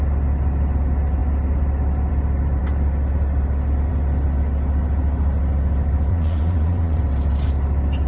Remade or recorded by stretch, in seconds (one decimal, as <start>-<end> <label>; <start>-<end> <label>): 0.0-6.1 recorded; 6.1-7.0 remade; 7.0-8.1 recorded